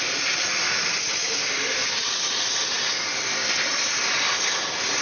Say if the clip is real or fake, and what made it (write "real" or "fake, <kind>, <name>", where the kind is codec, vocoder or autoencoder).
real